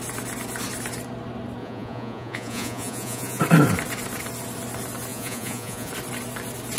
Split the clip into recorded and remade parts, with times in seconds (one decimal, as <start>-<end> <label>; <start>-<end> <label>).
0.0-1.6 recorded; 1.6-3.4 remade; 3.4-5.1 recorded; 5.1-5.9 remade; 5.9-6.8 recorded